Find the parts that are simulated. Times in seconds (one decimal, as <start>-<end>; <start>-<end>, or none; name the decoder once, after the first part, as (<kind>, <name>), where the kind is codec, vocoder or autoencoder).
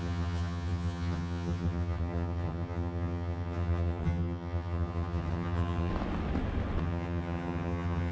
0.0-5.9 (vocoder, HiFi-GAN); 6.8-8.1